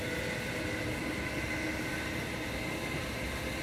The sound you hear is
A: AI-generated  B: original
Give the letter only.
B